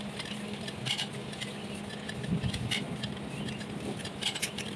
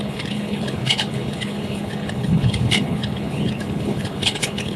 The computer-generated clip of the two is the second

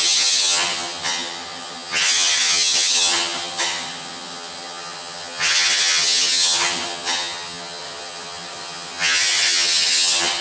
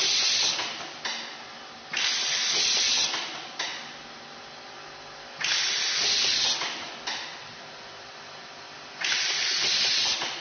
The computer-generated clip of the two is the first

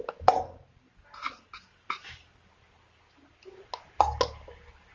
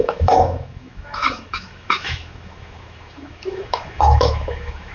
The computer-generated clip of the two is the second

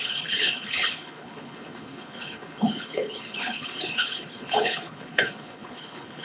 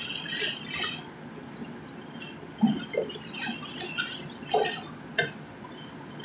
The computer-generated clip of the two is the first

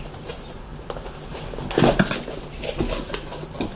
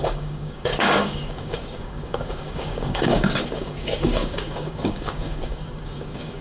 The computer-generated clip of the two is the second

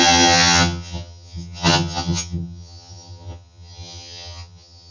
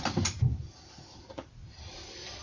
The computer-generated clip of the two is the first